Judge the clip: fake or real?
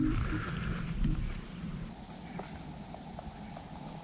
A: fake